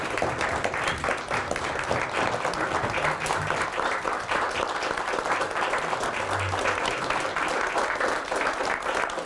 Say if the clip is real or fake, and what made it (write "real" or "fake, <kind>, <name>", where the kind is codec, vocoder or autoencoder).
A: real